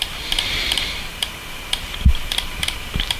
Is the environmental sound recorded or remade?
remade